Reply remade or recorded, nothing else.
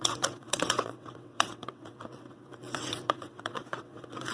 remade